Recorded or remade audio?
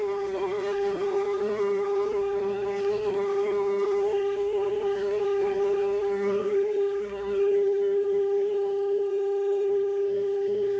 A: remade